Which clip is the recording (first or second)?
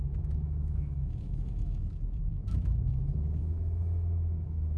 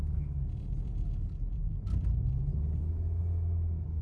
second